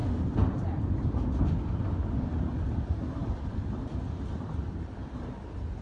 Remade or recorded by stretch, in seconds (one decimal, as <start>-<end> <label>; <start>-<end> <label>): 0.0-5.8 recorded